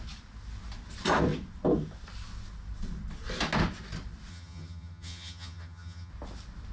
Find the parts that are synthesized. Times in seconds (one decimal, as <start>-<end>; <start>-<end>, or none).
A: 4.3-6.1